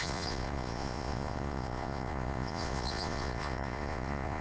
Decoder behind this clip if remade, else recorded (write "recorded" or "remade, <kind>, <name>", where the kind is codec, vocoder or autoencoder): remade, vocoder, Vocos